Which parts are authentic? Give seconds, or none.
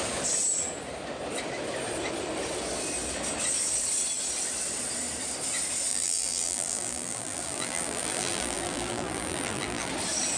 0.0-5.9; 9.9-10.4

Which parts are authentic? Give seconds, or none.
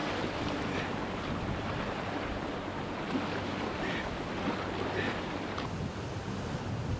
3.0-7.0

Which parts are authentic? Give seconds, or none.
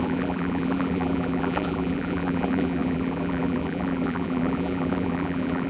none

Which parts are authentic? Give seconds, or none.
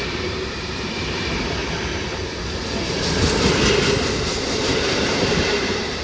1.6-4.6